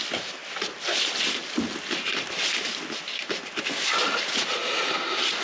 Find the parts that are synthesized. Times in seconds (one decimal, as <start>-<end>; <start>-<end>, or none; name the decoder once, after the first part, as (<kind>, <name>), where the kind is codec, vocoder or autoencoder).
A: 4.6-5.4 (vocoder, BigVGAN v2)